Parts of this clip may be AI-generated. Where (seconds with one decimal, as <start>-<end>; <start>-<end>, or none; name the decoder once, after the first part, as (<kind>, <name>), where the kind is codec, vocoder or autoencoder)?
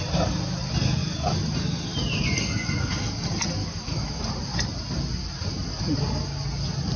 3.6-4.2 (autoencoder, DAC-VAE)